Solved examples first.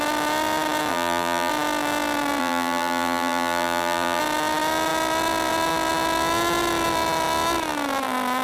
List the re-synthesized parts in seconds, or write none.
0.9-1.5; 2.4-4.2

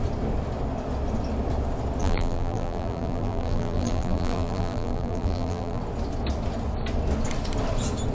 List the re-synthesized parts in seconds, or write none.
2.0-5.8